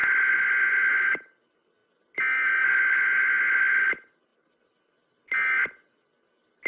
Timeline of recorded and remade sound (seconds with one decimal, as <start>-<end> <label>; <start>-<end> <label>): 0.0-6.7 recorded